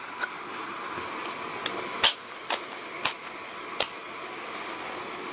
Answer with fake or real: real